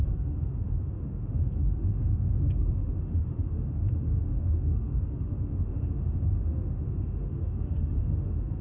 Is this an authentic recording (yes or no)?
no